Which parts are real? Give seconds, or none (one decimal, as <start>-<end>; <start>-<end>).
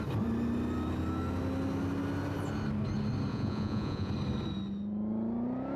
0.0-3.3; 4.1-5.8